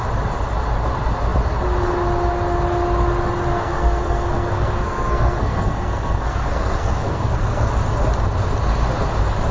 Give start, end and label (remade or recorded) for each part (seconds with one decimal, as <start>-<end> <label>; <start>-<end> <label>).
0.0-3.5 recorded; 3.5-7.7 remade; 7.7-9.5 recorded